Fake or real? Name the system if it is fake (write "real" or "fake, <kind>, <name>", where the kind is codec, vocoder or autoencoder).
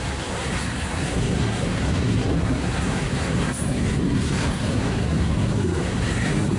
fake, codec, SNAC